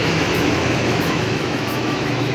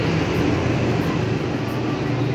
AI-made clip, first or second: first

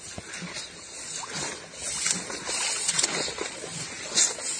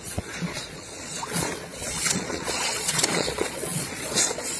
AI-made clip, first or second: second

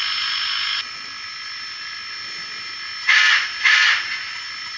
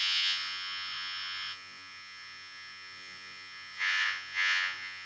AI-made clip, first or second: second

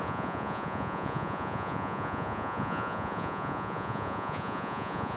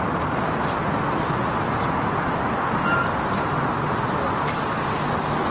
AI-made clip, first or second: first